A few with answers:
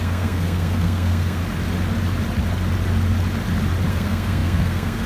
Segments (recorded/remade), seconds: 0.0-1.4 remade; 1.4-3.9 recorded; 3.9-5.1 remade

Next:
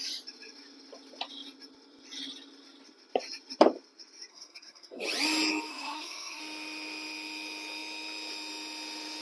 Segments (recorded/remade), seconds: 0.0-4.3 recorded; 4.3-5.0 remade; 5.0-5.7 recorded; 5.7-6.4 remade; 6.4-9.2 recorded

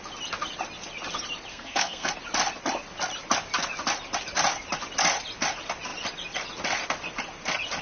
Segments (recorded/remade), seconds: 0.0-1.5 recorded; 1.5-2.1 remade; 2.1-7.8 recorded

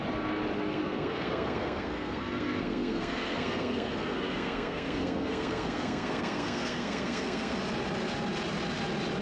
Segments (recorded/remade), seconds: 0.0-0.6 recorded; 0.6-7.6 remade; 7.6-9.2 recorded

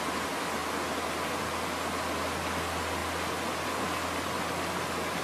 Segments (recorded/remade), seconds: 0.0-5.2 recorded

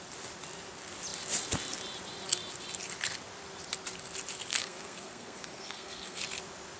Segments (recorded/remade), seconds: 0.0-4.5 recorded; 4.5-6.2 remade; 6.2-6.8 recorded